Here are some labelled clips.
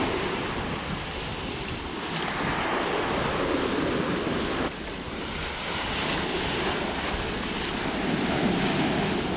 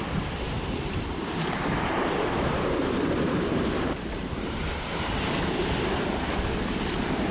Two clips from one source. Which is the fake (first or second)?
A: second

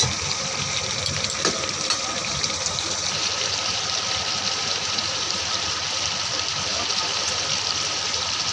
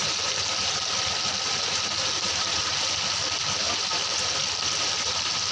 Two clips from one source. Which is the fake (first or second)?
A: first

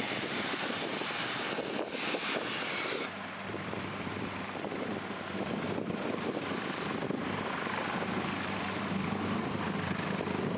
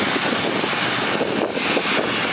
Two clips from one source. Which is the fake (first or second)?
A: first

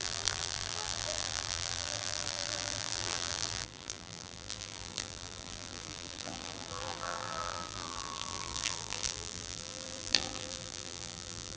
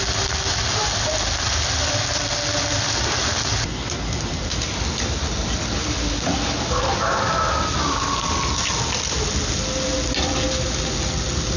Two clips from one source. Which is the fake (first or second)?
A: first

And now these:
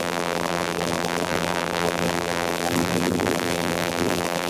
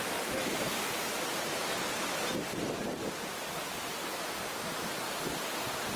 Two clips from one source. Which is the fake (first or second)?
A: first